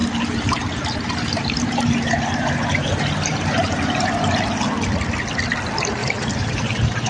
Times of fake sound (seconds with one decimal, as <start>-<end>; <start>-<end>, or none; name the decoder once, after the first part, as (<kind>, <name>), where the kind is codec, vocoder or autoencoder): 0.0-4.3 (vocoder, BigVGAN v2); 6.0-7.1